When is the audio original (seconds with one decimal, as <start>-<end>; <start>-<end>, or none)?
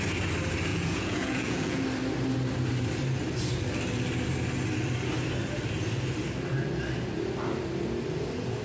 0.0-0.7; 1.8-8.6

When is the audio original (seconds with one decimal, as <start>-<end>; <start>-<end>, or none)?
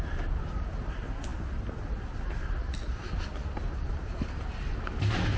0.0-5.4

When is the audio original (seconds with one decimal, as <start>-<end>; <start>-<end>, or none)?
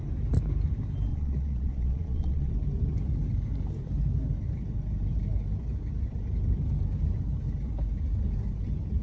0.0-1.1; 2.5-9.0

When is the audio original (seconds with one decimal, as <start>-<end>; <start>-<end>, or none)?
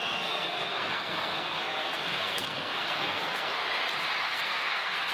3.6-4.2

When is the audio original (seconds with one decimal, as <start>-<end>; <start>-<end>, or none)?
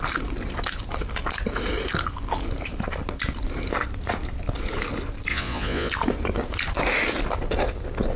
0.0-5.3; 5.9-8.2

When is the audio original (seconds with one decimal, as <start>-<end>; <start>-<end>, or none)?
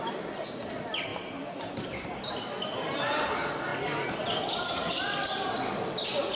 0.0-6.4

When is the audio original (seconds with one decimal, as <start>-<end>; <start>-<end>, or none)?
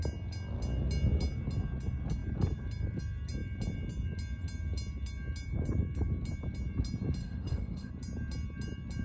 0.0-7.2; 7.9-9.0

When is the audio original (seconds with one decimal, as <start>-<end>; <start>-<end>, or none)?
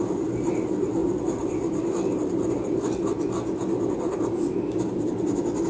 0.0-5.7